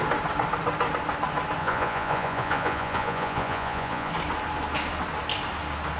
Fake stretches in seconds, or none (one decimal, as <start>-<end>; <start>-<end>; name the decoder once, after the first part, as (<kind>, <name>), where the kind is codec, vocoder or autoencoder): 1.6-4.1 (vocoder, Vocos)